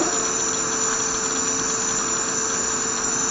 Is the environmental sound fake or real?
real